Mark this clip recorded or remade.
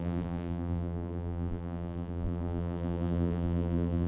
remade